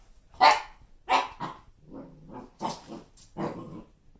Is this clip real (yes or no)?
yes